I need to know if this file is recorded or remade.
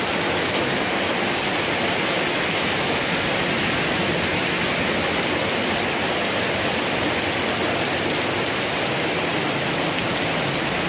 recorded